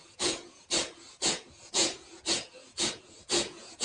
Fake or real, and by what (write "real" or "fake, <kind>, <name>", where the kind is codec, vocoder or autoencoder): fake, vocoder, Vocos